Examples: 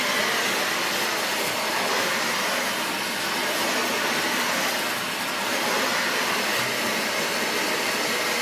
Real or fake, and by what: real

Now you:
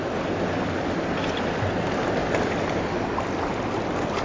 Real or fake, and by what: real